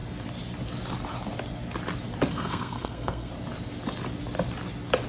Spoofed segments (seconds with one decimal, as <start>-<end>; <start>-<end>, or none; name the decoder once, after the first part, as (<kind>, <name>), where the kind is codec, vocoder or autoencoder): 2.3-3.3 (codec, SNAC)